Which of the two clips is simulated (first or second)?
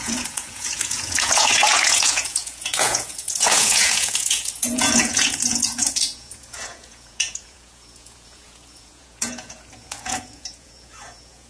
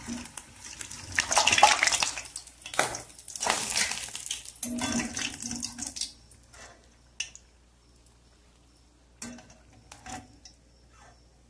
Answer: first